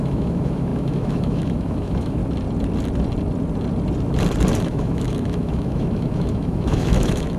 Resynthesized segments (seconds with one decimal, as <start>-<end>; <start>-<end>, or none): 0.0-2.2; 4.6-7.4